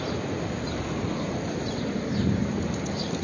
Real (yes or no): no